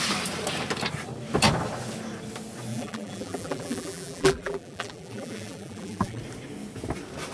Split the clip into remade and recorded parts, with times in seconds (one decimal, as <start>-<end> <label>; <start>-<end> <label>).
0.0-2.7 recorded; 2.7-6.2 remade; 6.2-7.3 recorded